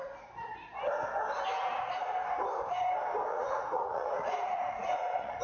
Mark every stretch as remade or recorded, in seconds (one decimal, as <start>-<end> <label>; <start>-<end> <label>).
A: 0.0-3.3 recorded; 3.3-5.4 remade